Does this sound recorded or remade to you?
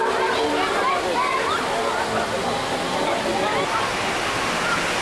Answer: recorded